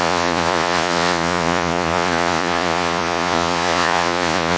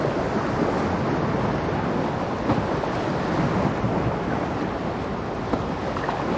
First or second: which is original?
second